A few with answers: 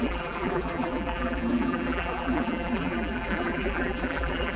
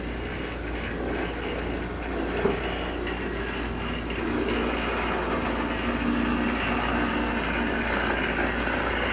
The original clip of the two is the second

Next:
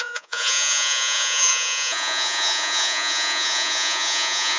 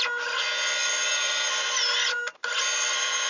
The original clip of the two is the second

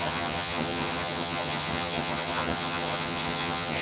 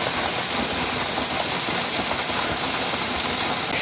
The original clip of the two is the second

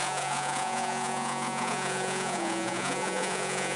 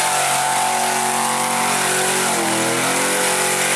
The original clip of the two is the second